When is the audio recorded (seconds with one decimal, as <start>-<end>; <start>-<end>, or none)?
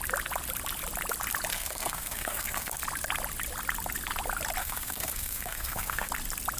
0.0-1.5; 2.8-4.6; 6.1-6.6